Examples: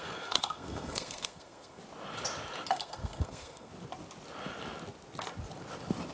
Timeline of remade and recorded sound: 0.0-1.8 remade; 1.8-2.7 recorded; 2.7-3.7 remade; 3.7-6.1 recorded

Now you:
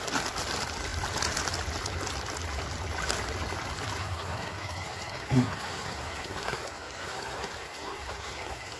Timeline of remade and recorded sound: 0.0-4.0 recorded; 4.0-8.8 remade

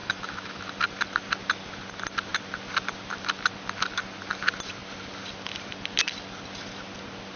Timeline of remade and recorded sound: 0.0-0.7 remade; 0.7-7.4 recorded

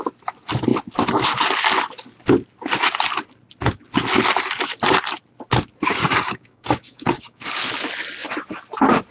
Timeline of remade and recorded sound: 0.0-6.0 recorded; 6.0-7.6 remade; 7.6-9.1 recorded

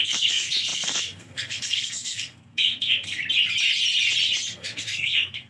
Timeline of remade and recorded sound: 0.0-3.2 remade; 3.2-4.5 recorded; 4.5-5.5 remade